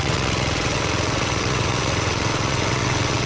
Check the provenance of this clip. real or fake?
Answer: fake